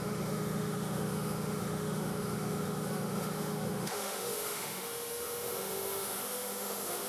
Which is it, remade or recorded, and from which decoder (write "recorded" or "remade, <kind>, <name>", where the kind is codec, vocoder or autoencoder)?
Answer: remade, autoencoder, DAC-VAE